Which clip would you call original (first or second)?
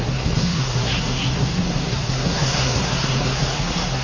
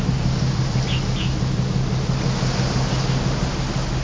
second